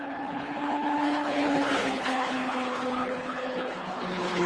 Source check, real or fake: fake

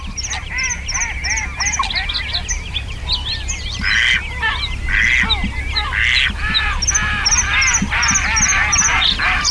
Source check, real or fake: real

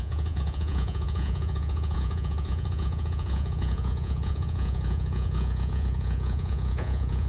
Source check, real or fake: fake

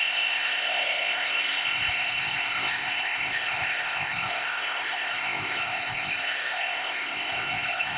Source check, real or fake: fake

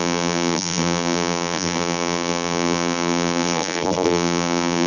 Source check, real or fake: fake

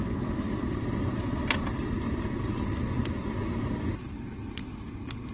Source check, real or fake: real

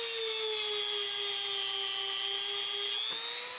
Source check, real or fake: real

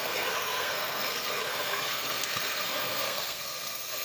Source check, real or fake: fake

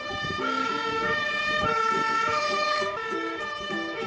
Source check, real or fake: fake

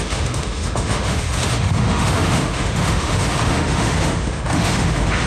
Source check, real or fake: fake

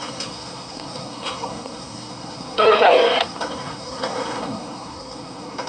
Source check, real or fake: fake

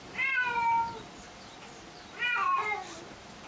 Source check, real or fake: real